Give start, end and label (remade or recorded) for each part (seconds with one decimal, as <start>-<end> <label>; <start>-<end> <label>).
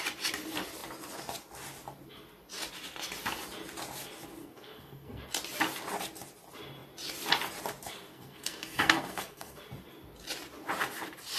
0.0-4.4 recorded; 4.4-5.2 remade; 5.2-8.1 recorded; 8.1-9.6 remade; 9.6-11.4 recorded